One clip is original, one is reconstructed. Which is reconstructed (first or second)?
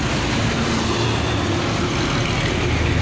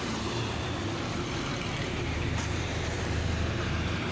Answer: second